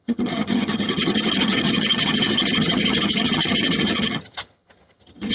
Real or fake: fake